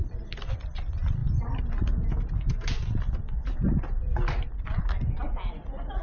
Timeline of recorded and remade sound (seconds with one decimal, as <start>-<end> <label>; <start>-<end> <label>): 0.0-6.0 recorded